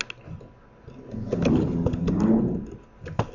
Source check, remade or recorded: recorded